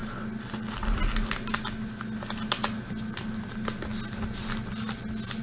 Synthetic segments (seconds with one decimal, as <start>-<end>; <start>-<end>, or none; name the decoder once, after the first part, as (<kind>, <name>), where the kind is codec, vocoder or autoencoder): none